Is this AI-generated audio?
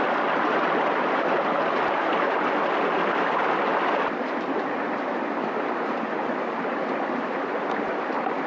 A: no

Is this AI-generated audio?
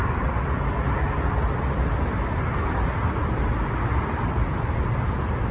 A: no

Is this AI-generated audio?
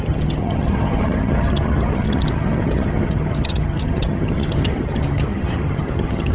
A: yes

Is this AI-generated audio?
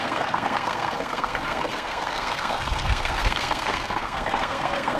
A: yes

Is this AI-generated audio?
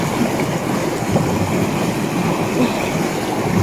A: no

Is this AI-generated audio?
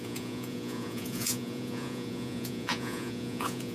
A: yes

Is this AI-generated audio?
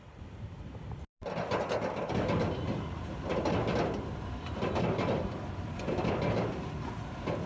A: no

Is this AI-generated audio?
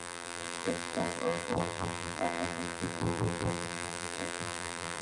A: yes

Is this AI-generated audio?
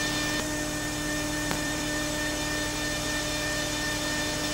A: yes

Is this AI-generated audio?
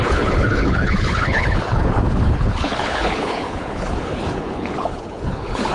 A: yes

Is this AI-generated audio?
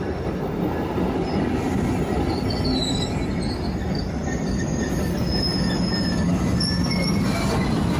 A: no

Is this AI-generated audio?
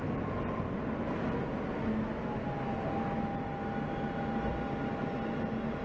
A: no